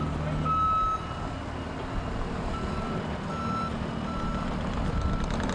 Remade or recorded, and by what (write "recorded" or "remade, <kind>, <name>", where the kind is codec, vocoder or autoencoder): recorded